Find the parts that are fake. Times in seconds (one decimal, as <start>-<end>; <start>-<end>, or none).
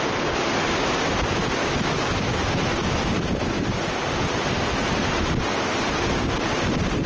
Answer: 1.6-2.5